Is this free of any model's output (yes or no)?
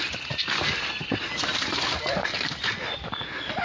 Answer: yes